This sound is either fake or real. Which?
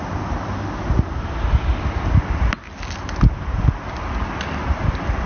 real